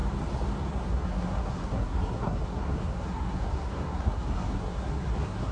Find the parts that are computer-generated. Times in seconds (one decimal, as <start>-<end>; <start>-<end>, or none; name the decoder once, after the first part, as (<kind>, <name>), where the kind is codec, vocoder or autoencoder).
0.7-5.5 (codec, SNAC)